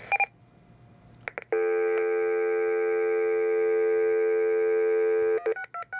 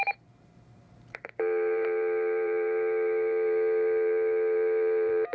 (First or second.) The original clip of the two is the first